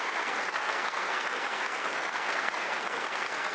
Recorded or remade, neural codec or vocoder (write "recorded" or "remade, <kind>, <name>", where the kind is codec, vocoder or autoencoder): remade, codec, SNAC